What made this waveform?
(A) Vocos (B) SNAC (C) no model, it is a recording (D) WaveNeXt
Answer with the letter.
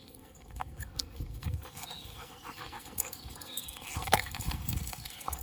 B